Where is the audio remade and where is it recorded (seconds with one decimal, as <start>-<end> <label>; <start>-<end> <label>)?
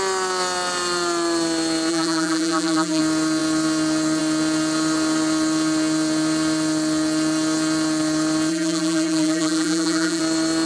0.0-1.9 recorded; 1.9-3.0 remade; 3.0-8.5 recorded; 8.5-10.2 remade; 10.2-10.7 recorded